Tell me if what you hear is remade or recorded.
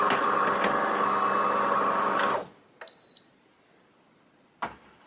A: recorded